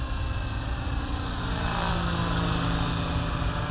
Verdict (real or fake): real